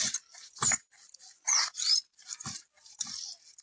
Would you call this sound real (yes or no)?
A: no